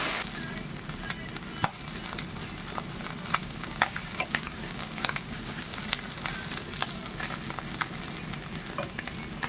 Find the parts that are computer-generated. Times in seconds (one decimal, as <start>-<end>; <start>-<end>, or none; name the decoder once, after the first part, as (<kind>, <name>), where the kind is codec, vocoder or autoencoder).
3.4-5.8 (codec, DAC)